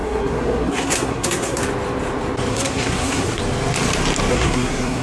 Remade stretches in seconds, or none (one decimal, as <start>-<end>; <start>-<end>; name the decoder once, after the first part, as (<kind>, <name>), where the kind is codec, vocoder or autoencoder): 0.0-1.6 (codec, SNAC); 2.5-3.4; 4.3-5.0